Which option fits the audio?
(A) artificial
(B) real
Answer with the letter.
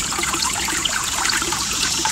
A